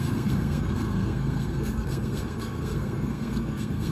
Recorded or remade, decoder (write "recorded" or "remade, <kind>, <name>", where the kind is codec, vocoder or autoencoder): remade, codec, SNAC